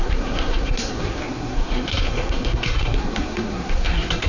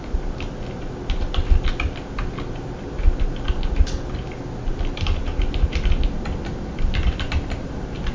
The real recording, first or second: second